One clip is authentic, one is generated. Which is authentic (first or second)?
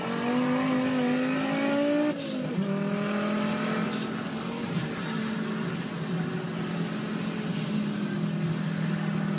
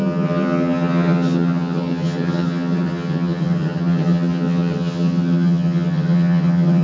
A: first